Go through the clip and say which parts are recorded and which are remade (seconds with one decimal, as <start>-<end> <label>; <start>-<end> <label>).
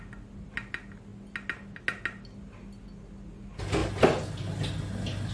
0.0-5.3 recorded